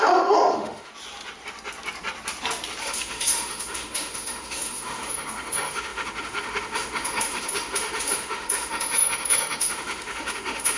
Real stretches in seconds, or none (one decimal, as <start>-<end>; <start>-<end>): 0.9-2.8